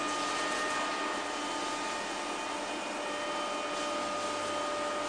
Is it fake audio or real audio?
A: real